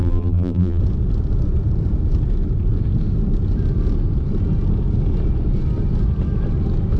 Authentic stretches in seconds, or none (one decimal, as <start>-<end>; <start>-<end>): 0.8-7.0